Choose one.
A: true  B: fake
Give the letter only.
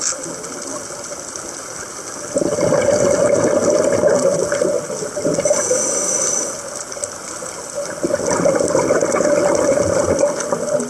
A